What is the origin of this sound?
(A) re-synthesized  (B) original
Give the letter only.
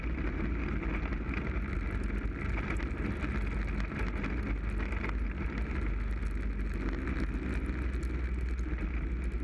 B